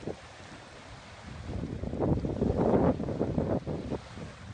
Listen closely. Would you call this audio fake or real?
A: fake